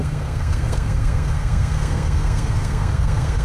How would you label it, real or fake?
fake